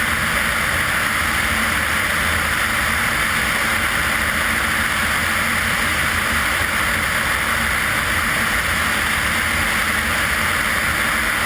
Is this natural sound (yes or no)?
yes